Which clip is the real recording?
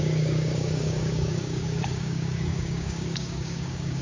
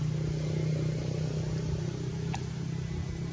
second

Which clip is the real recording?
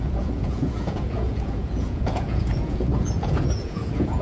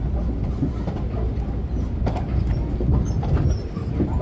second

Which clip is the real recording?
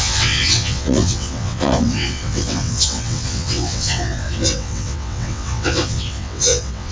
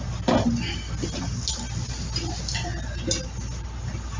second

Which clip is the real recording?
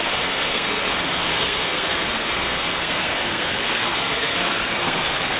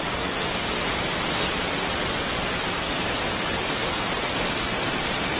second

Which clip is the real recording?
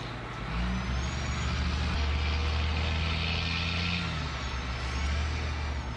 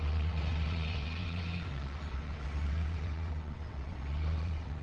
first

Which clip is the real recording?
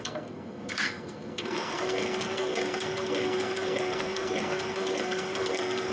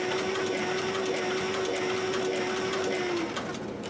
second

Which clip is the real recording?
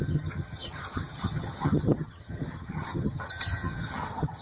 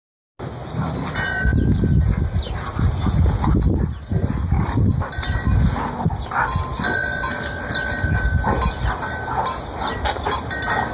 second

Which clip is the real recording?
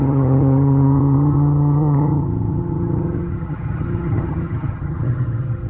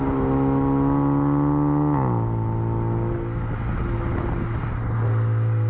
second